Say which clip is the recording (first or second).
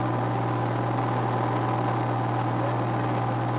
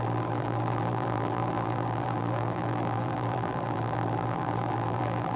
first